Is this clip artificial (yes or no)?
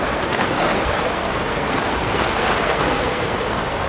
yes